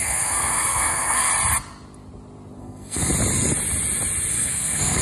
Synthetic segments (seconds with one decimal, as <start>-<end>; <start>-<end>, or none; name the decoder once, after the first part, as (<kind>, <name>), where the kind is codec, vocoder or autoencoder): 0.0-1.3 (codec, SNAC); 2.6-3.1; 4.3-5.0